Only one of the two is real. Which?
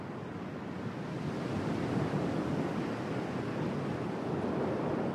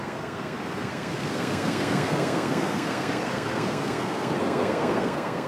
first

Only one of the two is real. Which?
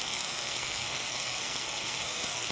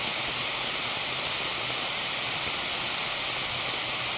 second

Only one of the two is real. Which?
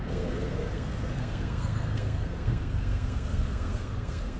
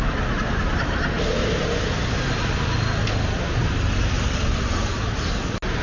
second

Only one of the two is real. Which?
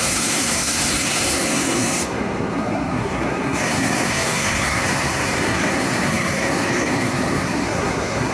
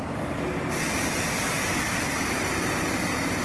second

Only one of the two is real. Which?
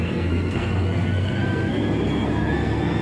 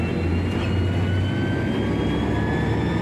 second